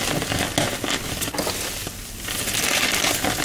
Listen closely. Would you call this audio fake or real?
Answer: real